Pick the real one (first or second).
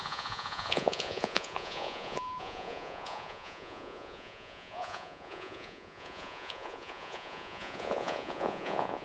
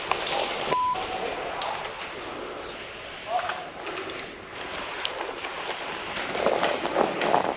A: second